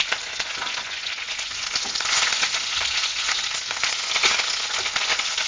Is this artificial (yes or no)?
yes